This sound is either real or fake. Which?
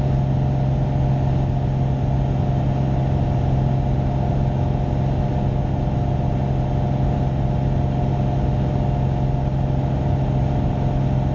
real